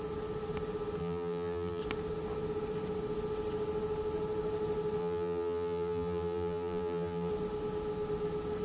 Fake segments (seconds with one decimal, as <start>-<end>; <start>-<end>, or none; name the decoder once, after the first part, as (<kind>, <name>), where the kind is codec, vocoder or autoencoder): 1.0-1.8 (vocoder, BigVGAN v2); 5.0-7.3

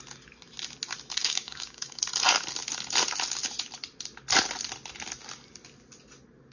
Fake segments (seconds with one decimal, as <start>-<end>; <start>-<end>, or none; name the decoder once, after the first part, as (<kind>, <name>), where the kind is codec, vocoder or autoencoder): 1.2-2.0 (codec, DAC)

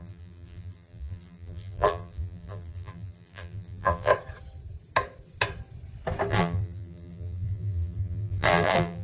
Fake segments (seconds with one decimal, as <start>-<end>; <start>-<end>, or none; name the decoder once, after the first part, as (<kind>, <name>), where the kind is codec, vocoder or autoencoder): 0.0-4.1 (vocoder, BigVGAN v2); 6.3-9.0

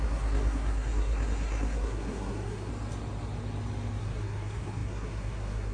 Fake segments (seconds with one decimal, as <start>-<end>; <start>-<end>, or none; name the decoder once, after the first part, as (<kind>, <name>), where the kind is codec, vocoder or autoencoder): 0.0-2.7 (codec, SNAC); 4.0-5.7